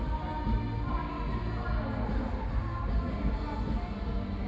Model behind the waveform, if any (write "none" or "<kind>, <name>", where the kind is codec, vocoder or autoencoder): none